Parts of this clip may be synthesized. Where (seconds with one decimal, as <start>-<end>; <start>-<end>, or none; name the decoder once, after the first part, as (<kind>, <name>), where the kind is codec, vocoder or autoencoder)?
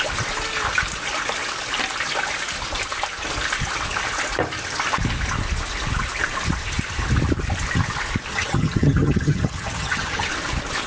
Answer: 8.3-10.3 (vocoder, HiFi-GAN)